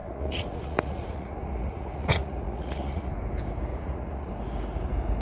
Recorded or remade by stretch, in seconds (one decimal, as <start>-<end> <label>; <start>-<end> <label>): 0.0-3.1 remade; 3.1-3.7 recorded; 3.7-4.3 remade; 4.3-5.2 recorded